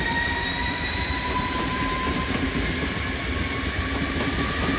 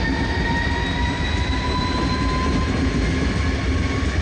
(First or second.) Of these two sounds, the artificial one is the first